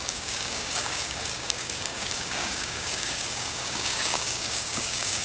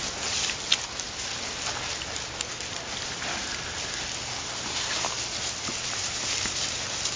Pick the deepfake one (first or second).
first